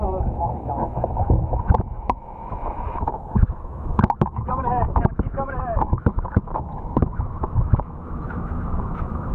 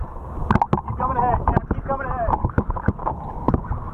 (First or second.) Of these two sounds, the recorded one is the second